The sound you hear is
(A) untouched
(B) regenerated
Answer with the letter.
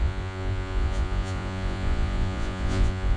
B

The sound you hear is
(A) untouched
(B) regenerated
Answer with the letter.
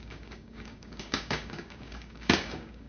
B